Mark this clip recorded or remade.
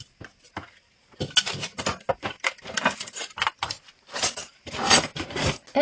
recorded